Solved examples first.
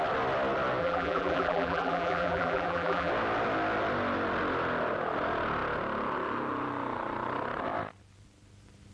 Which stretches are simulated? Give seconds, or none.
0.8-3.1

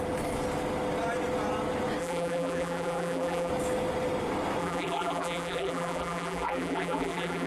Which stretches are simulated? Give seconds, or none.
2.0-3.5; 4.6-7.5